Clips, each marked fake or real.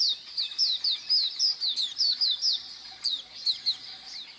real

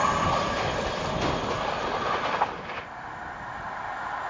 real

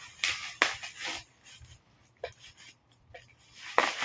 real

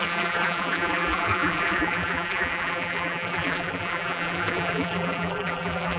fake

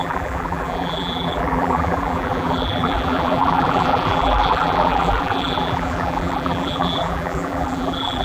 fake